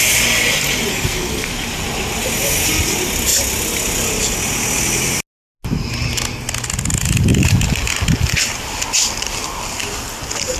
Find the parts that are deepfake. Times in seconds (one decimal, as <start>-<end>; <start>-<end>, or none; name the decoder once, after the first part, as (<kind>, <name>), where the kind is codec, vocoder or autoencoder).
0.9-1.5 (codec, SNAC)